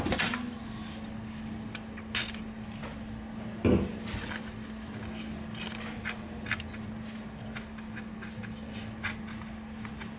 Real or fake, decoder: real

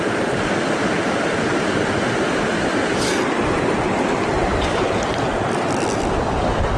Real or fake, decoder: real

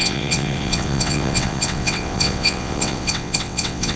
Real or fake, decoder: fake, vocoder, WaveNeXt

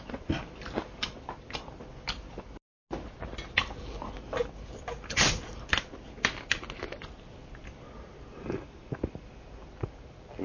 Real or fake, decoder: real